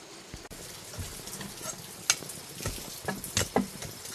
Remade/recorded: recorded